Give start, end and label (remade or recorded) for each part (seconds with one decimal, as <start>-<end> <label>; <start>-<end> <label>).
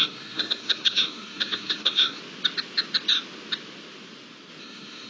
0.0-2.2 remade; 2.2-4.6 recorded; 4.6-5.1 remade